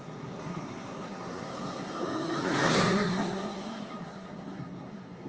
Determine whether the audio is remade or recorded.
remade